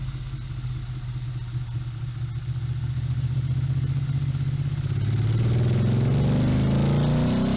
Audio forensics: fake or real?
real